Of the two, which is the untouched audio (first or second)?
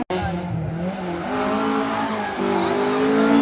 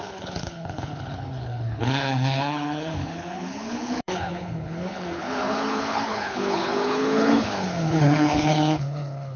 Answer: first